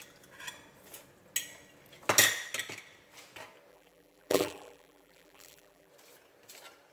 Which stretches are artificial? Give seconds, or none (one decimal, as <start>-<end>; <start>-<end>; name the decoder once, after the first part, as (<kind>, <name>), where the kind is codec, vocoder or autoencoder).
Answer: 3.7-5.9 (vocoder, BigVGAN v2)